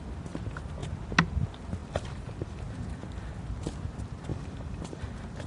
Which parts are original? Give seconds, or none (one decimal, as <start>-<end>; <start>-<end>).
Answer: 0.0-1.8; 2.6-4.3; 5.1-5.5